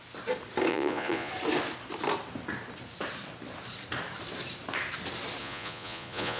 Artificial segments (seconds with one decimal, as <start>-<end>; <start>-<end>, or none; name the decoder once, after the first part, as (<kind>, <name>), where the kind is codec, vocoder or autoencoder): 0.7-1.3 (vocoder, Vocos); 5.4-6.4